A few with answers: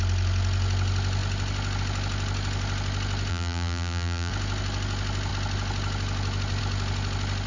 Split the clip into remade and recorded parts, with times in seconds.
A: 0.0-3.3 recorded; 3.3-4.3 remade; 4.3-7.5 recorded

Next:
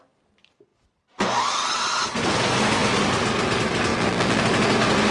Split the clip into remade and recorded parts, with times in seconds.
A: 0.0-3.9 recorded; 3.9-4.4 remade; 4.4-5.1 recorded

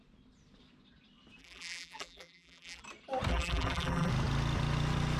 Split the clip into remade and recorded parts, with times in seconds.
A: 0.0-1.4 recorded; 1.4-2.8 remade; 2.8-3.3 recorded; 3.3-4.1 remade; 4.1-5.2 recorded

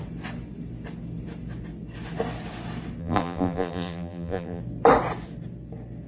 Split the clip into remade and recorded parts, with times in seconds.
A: 0.0-3.0 recorded; 3.0-4.6 remade; 4.6-6.1 recorded